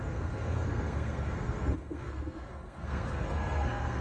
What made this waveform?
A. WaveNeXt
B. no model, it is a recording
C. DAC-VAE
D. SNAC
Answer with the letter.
D